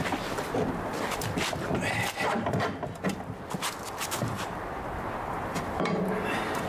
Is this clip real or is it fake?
real